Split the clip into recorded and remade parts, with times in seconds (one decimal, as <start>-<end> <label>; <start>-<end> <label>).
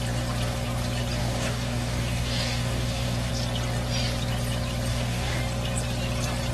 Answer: 0.0-1.2 recorded; 1.2-3.3 remade; 3.3-4.9 recorded; 4.9-5.4 remade; 5.4-6.5 recorded